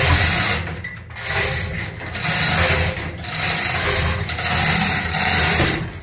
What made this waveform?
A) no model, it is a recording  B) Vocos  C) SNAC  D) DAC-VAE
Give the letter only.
A